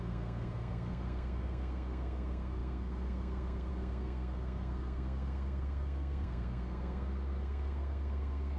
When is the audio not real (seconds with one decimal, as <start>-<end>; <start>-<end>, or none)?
0.0-8.6